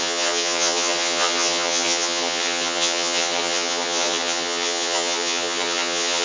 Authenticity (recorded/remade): remade